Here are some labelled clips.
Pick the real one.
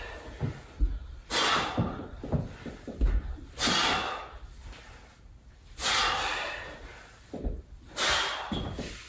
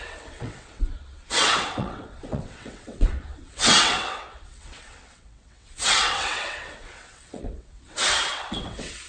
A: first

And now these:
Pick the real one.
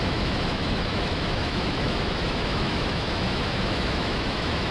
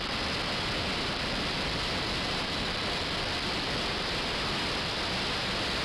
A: second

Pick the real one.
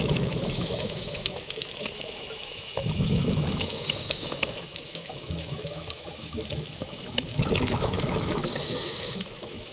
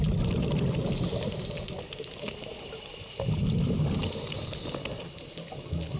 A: second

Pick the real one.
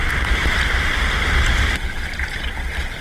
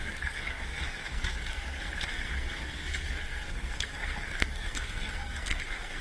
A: first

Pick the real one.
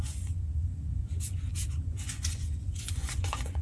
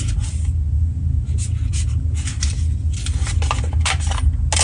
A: second